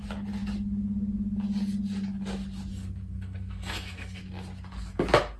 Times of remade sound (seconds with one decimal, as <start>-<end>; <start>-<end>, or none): 2.7-4.2